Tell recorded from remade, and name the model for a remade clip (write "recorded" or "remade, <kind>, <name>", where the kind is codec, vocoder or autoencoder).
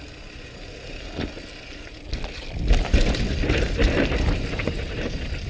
recorded